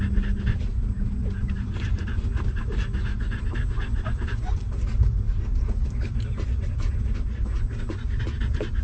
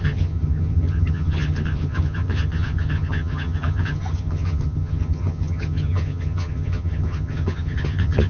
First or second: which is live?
first